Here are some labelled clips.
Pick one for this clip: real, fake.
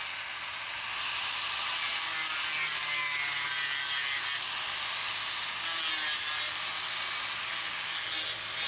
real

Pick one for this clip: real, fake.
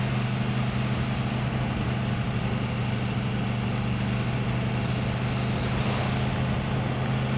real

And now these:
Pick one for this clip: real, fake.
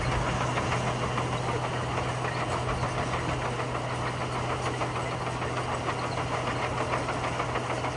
real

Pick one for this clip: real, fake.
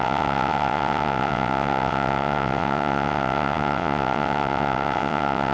fake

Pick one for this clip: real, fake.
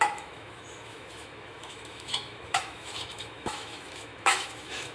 fake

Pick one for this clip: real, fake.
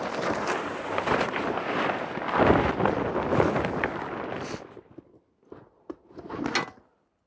real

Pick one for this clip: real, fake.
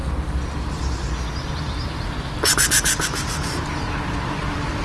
real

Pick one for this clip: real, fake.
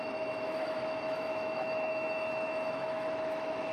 fake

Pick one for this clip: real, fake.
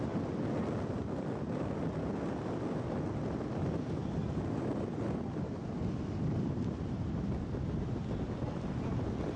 real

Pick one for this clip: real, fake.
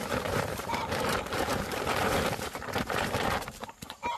fake